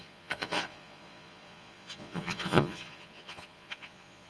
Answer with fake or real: fake